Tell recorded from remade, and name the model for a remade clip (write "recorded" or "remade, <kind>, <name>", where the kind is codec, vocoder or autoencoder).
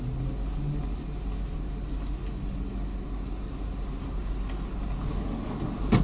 recorded